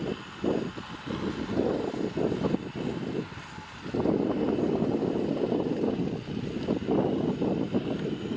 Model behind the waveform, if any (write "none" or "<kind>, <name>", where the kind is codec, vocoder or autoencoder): none